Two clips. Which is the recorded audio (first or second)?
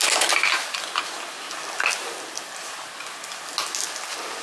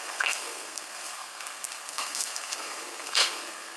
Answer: first